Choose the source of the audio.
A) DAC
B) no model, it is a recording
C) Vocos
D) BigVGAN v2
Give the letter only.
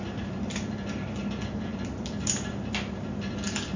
B